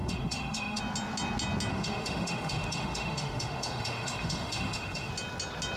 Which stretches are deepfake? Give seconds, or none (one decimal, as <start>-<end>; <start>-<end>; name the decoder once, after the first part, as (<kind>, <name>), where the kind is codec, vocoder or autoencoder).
0.0-0.8 (autoencoder, DAC-VAE); 1.7-5.1